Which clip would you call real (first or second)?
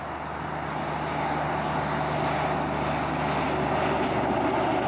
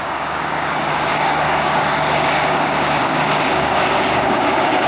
first